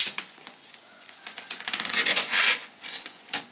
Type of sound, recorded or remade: remade